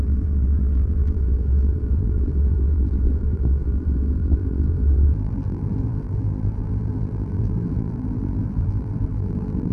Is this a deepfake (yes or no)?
yes